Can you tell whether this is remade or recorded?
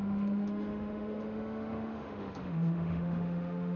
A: remade